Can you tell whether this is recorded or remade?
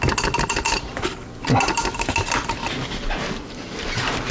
recorded